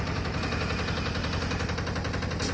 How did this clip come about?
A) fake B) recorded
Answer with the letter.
B